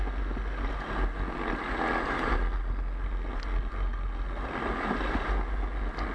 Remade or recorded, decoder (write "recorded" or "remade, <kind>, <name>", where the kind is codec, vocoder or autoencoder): recorded